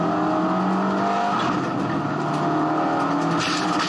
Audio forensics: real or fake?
real